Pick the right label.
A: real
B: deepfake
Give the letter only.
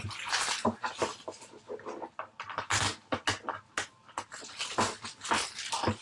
A